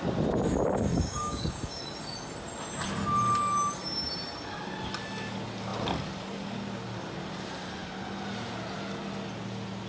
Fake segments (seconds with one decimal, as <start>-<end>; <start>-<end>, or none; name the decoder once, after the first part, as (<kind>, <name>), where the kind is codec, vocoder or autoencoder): 0.9-1.8 (codec, DAC)